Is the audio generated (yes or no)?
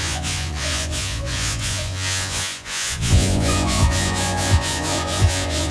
yes